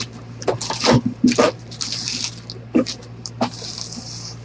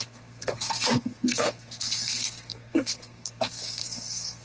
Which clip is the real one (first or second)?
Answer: first